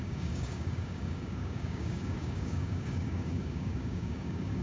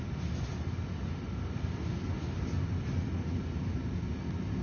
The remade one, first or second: first